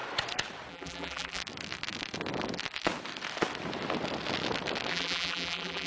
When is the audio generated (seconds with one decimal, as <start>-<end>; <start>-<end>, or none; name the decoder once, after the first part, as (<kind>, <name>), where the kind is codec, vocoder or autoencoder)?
0.7-1.4 (vocoder, BigVGAN v2); 4.9-5.9